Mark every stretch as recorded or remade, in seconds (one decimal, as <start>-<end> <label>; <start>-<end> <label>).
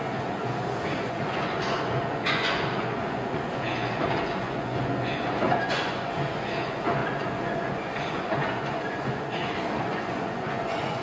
0.0-11.0 remade